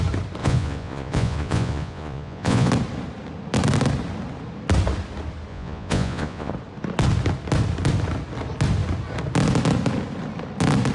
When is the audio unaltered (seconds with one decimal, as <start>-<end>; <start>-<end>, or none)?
0.0-0.4; 2.7-5.5; 6.5-10.9